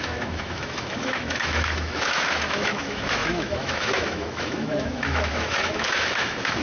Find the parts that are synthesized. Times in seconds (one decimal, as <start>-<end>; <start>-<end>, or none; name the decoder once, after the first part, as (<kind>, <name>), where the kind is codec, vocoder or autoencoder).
0.0-6.6 (autoencoder, DAC-VAE)